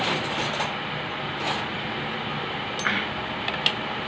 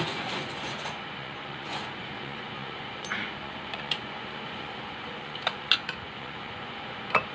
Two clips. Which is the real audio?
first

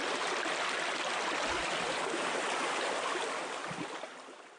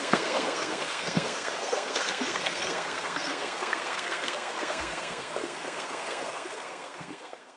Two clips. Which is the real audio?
first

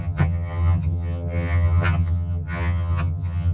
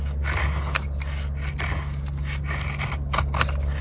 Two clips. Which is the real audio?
second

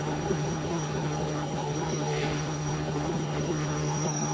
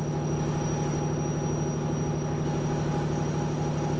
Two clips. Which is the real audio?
second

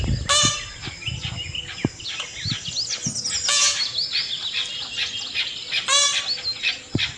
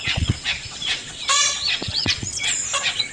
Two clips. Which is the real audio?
first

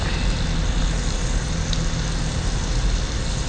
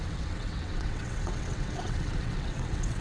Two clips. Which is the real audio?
first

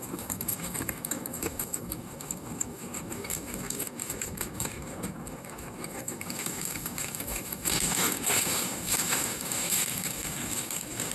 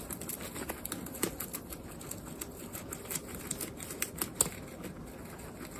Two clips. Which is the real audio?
second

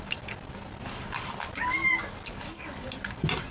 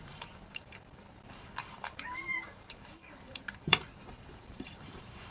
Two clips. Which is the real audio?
first